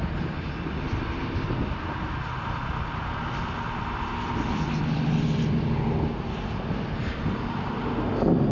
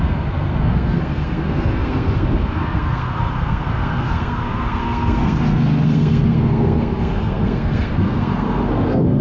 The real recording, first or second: first